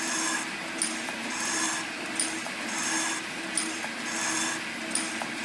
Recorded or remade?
recorded